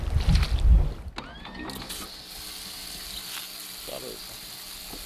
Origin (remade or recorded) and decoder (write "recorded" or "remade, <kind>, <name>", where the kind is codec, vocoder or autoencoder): recorded